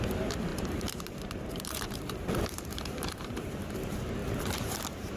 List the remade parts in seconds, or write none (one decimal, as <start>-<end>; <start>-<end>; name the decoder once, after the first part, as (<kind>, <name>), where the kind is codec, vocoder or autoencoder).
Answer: 0.0-4.2 (vocoder, BigVGAN v2)